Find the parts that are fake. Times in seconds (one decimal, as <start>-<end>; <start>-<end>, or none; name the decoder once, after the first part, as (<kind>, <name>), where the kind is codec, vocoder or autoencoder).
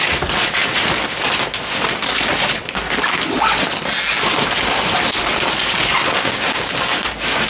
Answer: 6.2-6.7 (codec, DAC)